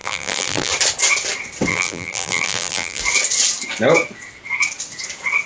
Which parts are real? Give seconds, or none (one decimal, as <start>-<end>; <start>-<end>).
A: 0.7-1.7; 3.0-5.5